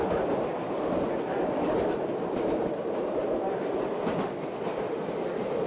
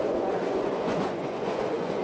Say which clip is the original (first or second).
first